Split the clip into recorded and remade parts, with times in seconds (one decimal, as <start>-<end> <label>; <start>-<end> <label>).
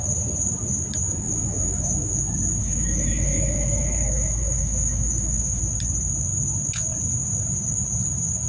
0.0-1.0 recorded; 1.0-2.2 remade; 2.2-2.6 recorded; 2.6-5.6 remade; 5.6-8.5 recorded